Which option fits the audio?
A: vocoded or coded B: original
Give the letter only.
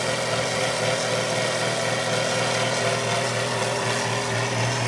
B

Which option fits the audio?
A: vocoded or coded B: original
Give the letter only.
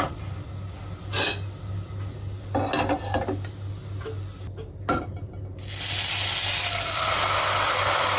B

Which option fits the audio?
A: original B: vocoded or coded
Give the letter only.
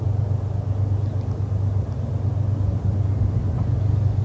A